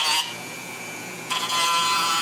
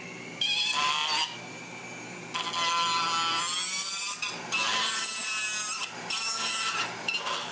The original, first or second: second